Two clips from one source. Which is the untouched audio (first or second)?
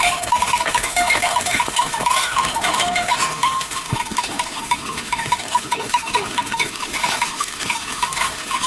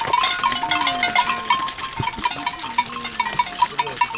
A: second